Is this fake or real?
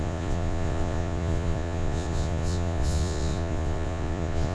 fake